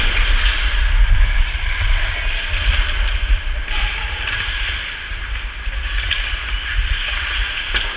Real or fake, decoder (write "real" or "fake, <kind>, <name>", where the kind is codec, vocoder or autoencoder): real